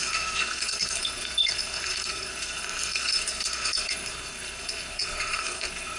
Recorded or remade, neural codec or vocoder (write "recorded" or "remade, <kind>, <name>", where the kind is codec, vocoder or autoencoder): remade, codec, SNAC